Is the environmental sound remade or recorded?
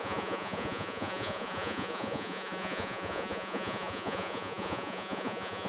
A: remade